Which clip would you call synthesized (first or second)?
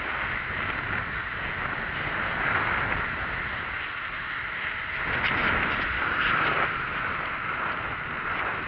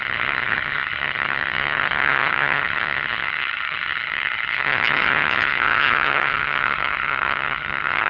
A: second